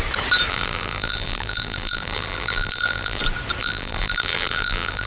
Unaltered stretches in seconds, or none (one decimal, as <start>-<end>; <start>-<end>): 0.0-0.5; 3.2-3.6